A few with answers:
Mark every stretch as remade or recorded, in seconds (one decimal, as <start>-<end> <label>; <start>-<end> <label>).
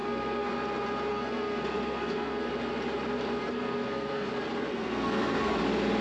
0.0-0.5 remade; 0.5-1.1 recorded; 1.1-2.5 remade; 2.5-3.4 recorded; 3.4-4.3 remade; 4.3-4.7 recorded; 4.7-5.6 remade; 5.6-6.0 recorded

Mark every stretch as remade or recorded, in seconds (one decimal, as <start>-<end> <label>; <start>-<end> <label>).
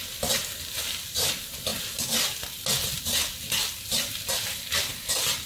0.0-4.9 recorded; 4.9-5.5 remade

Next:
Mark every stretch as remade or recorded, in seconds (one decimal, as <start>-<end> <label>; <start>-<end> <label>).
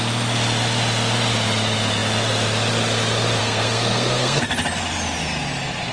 0.0-3.4 recorded; 3.4-4.4 remade; 4.4-5.9 recorded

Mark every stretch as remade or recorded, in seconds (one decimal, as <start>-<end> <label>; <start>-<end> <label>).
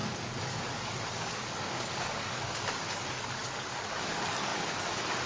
0.0-5.3 remade